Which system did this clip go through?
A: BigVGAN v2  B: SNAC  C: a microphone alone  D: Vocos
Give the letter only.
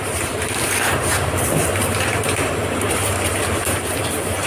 A